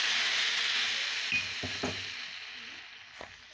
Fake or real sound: real